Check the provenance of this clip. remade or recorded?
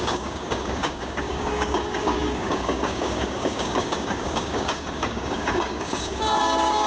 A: remade